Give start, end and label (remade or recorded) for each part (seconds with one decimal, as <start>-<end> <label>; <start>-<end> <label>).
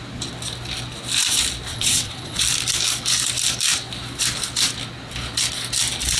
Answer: 0.0-1.7 recorded; 1.7-2.4 remade; 2.4-6.2 recorded